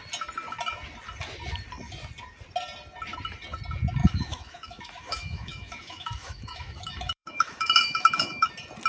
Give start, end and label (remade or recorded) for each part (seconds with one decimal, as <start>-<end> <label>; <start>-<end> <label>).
0.0-4.0 recorded; 4.0-8.5 remade; 8.5-8.9 recorded